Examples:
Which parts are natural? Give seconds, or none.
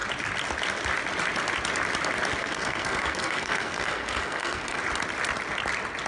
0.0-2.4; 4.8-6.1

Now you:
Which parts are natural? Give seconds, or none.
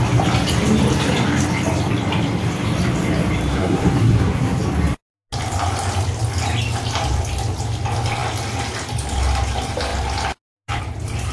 0.0-3.5; 4.6-11.3